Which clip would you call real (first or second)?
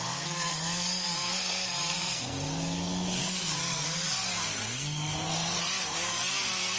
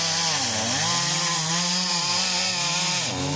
second